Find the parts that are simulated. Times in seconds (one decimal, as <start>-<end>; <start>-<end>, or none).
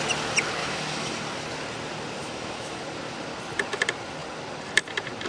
0.6-1.1; 2.2-2.8